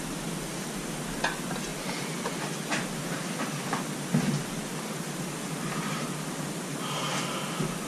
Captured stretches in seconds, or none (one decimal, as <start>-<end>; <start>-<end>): 0.0-1.7; 5.1-7.9